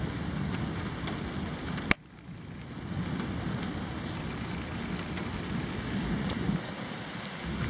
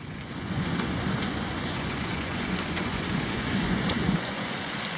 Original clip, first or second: first